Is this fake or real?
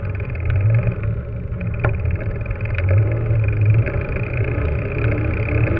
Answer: real